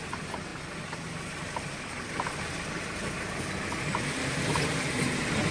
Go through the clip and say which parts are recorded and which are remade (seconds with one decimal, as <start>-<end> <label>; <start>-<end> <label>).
0.0-5.5 recorded